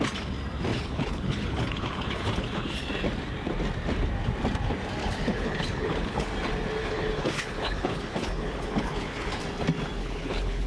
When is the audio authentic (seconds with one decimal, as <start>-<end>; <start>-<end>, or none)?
0.0-0.7; 2.8-5.0; 6.3-6.8; 9.4-10.0